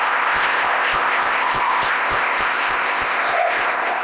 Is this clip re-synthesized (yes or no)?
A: yes